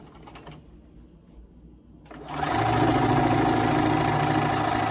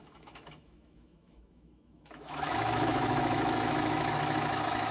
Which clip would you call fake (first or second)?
second